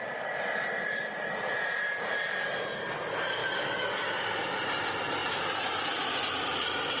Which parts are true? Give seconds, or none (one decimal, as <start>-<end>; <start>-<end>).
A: 0.0-3.4; 4.1-7.0